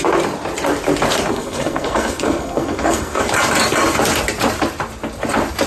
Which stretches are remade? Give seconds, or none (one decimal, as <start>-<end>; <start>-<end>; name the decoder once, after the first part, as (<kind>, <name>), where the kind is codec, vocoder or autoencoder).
1.3-3.2 (codec, SNAC)